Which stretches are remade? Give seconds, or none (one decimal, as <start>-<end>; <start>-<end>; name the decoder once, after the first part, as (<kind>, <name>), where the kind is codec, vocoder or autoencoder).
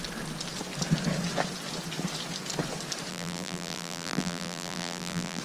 3.1-5.4 (vocoder, BigVGAN v2)